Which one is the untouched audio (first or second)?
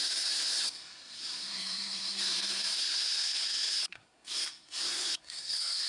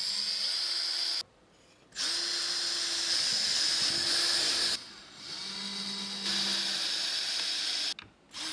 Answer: second